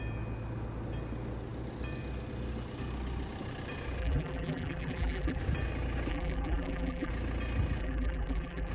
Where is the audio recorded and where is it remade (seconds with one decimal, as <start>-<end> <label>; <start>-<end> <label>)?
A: 0.0-4.0 recorded; 4.0-5.4 remade; 5.4-6.1 recorded; 6.1-7.1 remade; 7.1-7.8 recorded; 7.8-8.7 remade